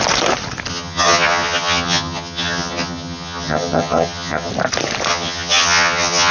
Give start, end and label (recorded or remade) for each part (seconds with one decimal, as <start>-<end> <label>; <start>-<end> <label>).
0.0-0.7 recorded; 0.7-4.5 remade; 4.5-5.1 recorded; 5.1-6.3 remade